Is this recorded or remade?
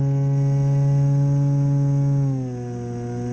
recorded